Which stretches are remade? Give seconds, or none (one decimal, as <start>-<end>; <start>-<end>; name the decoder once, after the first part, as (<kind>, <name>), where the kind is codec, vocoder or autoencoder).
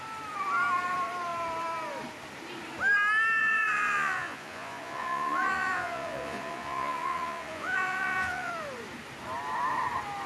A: 3.4-8.5 (vocoder, Vocos)